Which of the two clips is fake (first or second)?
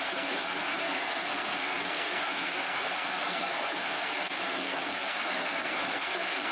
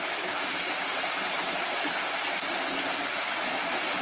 first